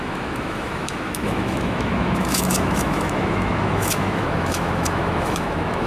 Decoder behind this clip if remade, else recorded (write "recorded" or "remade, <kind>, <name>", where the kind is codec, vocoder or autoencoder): remade, autoencoder, DAC-VAE